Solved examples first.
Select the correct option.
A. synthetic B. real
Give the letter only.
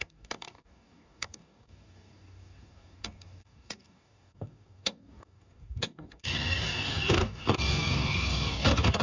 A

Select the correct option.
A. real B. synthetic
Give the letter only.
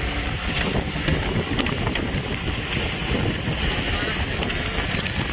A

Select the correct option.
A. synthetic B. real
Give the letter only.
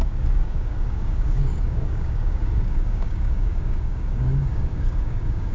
A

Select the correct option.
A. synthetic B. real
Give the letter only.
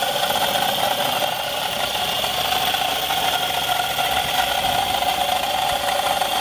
B